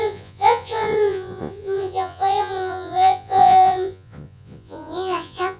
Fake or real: fake